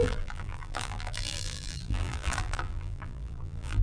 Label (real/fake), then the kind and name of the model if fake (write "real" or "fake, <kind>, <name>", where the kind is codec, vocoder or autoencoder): fake, vocoder, BigVGAN v2